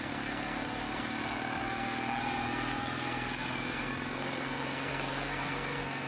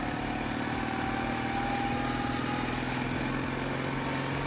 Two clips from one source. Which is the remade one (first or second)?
first